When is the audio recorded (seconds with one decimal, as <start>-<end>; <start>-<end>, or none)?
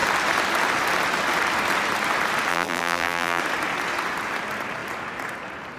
0.0-2.5; 3.4-5.8